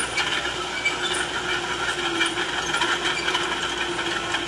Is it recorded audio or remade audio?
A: recorded